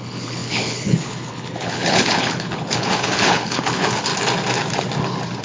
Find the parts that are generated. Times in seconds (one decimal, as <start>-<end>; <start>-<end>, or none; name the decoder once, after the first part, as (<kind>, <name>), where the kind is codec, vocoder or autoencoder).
0.0-4.1 (codec, HILCodec)